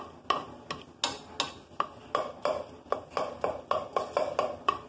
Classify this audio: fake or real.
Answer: real